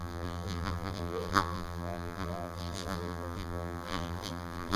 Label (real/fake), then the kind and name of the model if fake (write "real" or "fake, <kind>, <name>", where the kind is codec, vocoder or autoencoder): fake, vocoder, BigVGAN v2